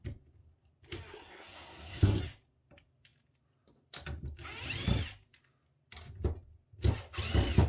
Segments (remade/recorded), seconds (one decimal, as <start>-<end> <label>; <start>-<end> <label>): 0.0-1.1 recorded; 1.1-2.2 remade; 2.2-7.7 recorded